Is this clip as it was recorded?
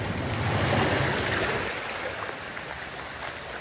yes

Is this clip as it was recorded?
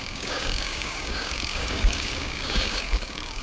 no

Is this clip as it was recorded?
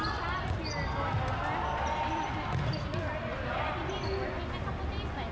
yes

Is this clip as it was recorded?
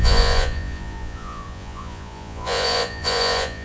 no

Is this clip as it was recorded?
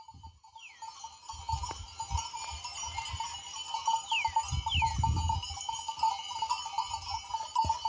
yes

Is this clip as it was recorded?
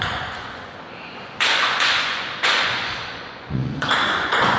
no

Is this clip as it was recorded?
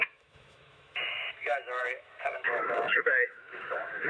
no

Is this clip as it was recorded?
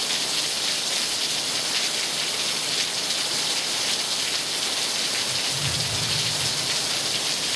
yes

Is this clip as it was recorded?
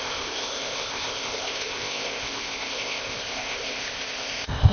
no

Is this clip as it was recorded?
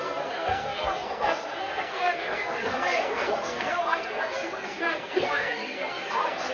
no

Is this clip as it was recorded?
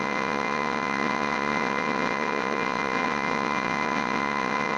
no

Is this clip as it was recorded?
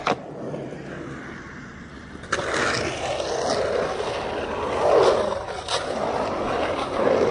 yes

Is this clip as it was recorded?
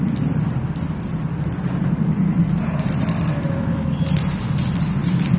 yes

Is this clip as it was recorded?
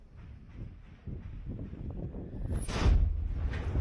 yes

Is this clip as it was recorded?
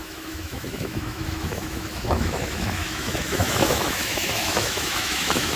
no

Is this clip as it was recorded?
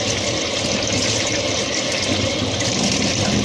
yes